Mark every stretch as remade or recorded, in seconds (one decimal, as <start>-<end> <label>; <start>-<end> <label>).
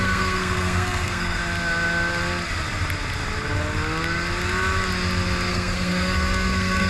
0.0-1.4 remade; 1.4-5.5 recorded; 5.5-6.9 remade